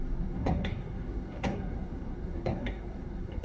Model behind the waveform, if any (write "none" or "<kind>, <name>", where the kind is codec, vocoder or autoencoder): codec, SNAC